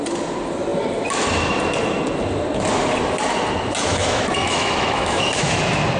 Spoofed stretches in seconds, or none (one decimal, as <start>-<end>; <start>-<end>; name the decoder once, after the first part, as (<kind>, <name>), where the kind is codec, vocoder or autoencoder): 3.9-5.6 (autoencoder, DAC-VAE)